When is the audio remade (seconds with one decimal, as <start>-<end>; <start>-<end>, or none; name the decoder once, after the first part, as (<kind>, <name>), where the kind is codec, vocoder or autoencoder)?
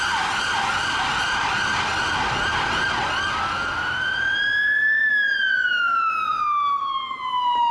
none